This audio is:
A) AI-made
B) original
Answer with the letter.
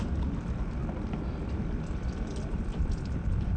A